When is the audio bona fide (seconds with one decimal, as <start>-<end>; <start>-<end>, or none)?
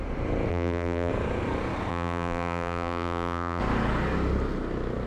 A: 0.0-0.5; 1.1-1.9; 3.6-5.1